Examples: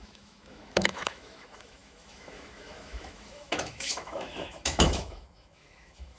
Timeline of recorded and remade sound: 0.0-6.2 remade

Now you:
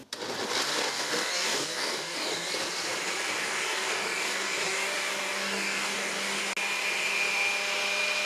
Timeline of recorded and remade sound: 0.0-0.8 recorded; 0.8-2.5 remade; 2.5-3.4 recorded; 3.4-6.4 remade; 6.4-8.3 recorded